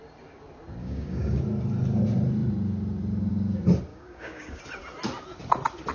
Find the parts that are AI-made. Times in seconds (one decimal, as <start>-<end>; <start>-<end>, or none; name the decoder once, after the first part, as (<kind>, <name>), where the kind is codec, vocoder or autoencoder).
0.8-1.4 (codec, DAC); 3.9-4.6